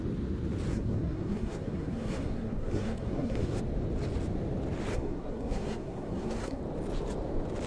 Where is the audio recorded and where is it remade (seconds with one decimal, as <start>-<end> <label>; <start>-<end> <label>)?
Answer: 0.0-0.7 recorded; 0.7-3.6 remade; 3.6-4.9 recorded; 4.9-6.6 remade; 6.6-7.7 recorded